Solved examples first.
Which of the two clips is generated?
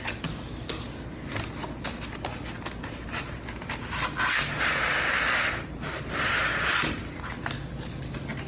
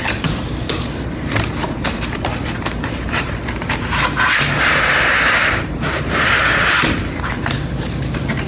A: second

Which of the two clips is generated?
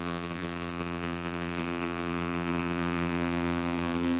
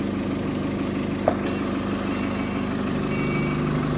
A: first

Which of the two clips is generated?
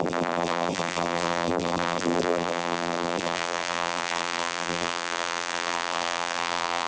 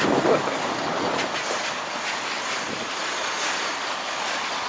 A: first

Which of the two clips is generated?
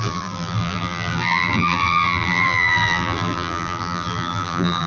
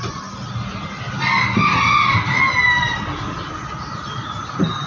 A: first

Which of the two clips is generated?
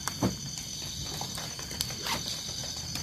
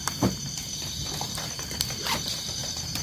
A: second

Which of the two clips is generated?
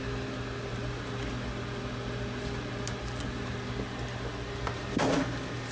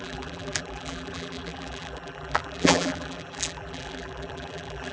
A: second